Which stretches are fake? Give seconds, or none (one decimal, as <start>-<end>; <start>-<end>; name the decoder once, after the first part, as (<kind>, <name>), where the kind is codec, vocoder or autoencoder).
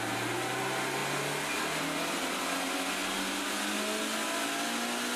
none